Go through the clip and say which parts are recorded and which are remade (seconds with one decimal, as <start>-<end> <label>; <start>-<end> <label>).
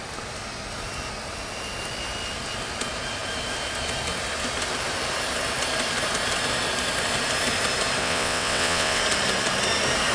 0.0-8.0 recorded; 8.0-9.0 remade; 9.0-10.1 recorded